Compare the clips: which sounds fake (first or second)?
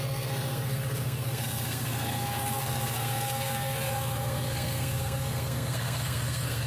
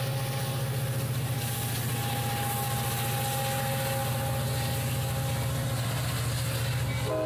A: first